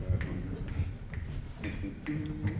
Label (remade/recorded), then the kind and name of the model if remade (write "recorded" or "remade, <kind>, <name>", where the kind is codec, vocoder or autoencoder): recorded